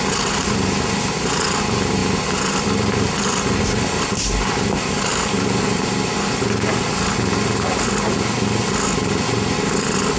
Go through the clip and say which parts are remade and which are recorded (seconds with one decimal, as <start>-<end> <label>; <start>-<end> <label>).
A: 0.0-10.2 recorded